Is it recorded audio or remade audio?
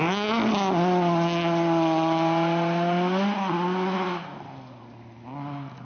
recorded